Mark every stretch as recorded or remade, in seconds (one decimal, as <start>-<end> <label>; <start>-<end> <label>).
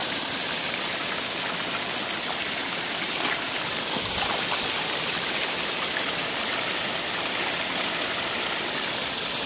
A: 0.0-9.5 recorded